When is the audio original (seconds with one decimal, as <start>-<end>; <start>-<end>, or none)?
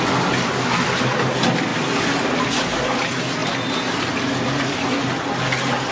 0.0-3.4; 5.2-5.9